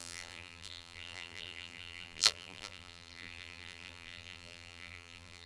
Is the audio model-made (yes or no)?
yes